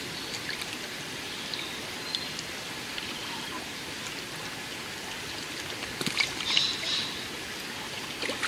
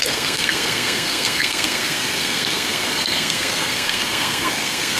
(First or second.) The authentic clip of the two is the first